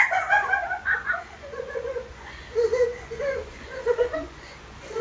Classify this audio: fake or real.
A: fake